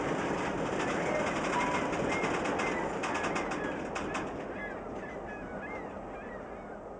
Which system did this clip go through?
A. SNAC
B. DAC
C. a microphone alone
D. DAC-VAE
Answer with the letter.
C